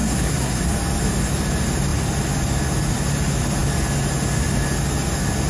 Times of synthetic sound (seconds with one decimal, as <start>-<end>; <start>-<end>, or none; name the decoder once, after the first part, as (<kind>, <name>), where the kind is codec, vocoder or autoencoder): 0.0-0.6 (codec, SNAC)